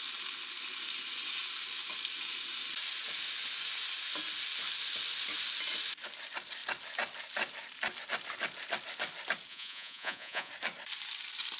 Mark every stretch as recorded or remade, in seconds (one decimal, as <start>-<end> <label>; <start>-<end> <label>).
0.0-9.5 recorded; 9.5-10.5 remade; 10.5-11.6 recorded

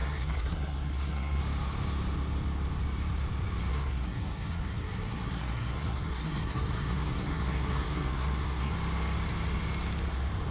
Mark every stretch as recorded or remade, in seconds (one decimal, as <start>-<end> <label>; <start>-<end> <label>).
0.0-1.4 remade; 1.4-3.7 recorded; 3.7-8.7 remade; 8.7-10.5 recorded

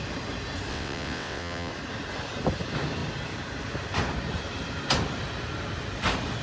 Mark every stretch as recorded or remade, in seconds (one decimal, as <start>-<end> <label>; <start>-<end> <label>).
0.0-0.7 recorded; 0.7-1.7 remade; 1.7-6.4 recorded

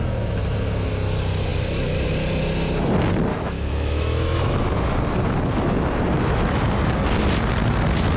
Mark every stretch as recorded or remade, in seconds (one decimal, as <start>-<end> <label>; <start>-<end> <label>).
0.0-3.3 recorded; 3.3-4.6 remade; 4.6-8.2 recorded

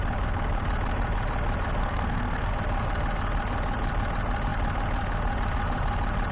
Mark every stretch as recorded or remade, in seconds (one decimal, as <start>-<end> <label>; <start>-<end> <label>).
0.0-1.8 recorded; 1.8-2.5 remade; 2.5-6.3 recorded

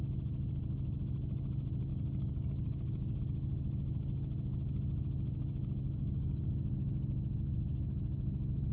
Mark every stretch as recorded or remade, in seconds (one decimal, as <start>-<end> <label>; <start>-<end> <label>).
0.0-1.9 recorded; 1.9-3.2 remade; 3.2-6.0 recorded; 6.0-6.7 remade; 6.7-8.7 recorded

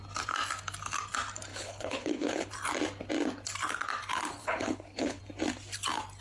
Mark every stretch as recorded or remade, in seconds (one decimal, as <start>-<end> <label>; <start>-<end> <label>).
0.0-1.5 recorded; 1.5-2.5 remade; 2.5-4.4 recorded; 4.4-5.2 remade; 5.2-6.2 recorded

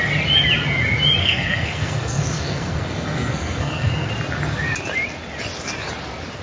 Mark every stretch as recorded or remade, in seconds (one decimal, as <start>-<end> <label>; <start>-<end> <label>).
0.0-1.2 recorded; 1.2-4.1 remade; 4.1-6.4 recorded